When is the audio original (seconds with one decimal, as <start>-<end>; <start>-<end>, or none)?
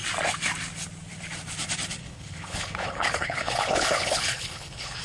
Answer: 0.0-2.0